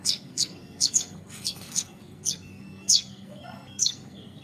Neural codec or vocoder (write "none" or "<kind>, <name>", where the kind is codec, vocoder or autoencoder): codec, SNAC